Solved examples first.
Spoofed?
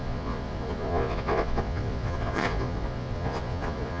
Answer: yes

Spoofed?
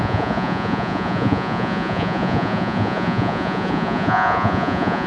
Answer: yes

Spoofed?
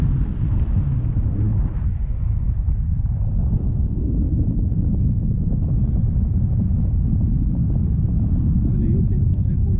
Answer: no